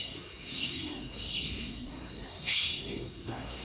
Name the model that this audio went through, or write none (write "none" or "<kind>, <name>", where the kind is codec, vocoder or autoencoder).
codec, SNAC